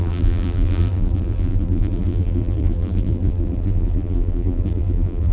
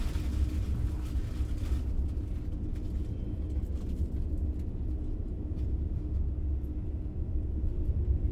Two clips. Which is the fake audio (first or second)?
first